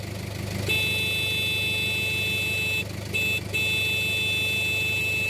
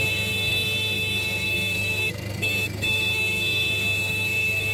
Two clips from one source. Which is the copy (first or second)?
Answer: second